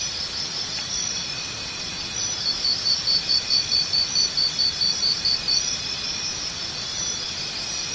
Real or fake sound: real